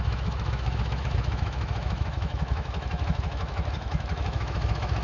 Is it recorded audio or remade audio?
remade